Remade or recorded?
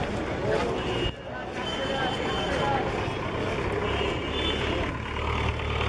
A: recorded